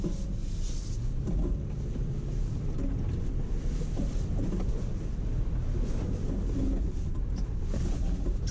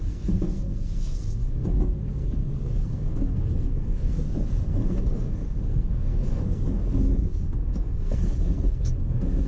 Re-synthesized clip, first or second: second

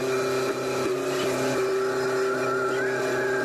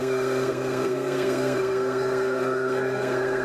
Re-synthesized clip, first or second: second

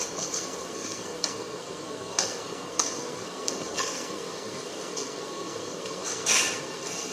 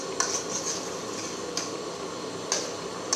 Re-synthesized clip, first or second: first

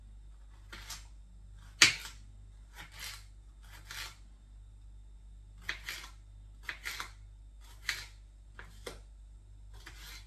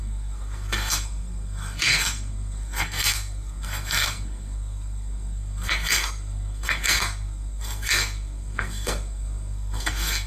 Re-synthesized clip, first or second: second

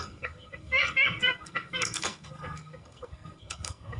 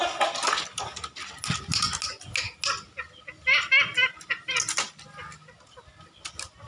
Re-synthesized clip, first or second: first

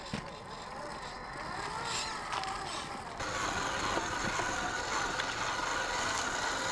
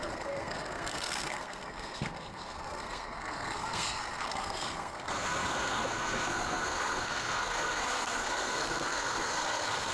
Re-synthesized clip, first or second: second